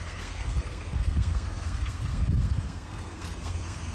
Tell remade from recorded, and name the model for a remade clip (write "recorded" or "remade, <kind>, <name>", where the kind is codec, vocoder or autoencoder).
remade, codec, SNAC